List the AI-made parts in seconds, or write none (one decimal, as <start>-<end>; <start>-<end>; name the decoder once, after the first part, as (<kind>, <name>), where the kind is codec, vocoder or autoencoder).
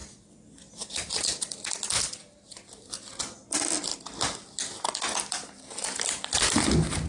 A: none